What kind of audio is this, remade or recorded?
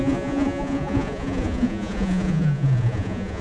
remade